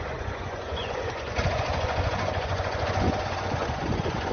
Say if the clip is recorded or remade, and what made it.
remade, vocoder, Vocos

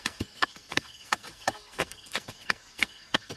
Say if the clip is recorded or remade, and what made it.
remade, codec, SNAC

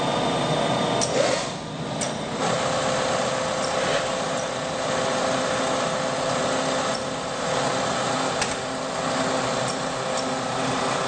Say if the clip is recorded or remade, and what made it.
recorded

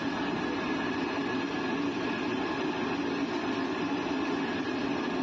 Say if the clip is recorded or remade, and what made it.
recorded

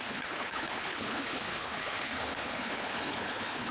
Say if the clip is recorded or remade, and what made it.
remade, codec, HILCodec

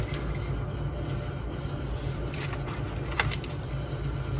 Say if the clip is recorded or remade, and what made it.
recorded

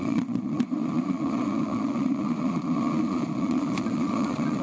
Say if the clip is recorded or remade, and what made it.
remade, vocoder, Vocos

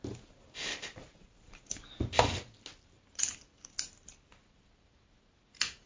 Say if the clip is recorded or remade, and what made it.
recorded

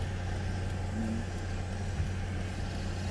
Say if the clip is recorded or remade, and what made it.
recorded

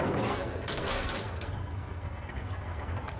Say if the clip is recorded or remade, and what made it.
remade, codec, SNAC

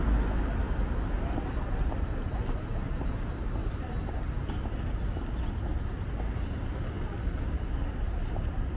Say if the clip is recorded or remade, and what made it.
recorded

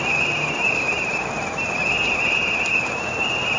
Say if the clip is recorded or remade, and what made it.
recorded